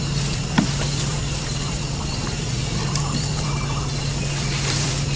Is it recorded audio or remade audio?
remade